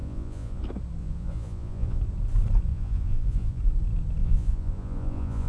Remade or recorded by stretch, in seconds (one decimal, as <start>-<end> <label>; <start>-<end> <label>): 0.0-0.6 remade; 0.6-1.0 recorded; 1.0-2.0 remade; 2.0-2.7 recorded; 2.7-3.6 remade; 3.6-4.2 recorded; 4.2-5.5 remade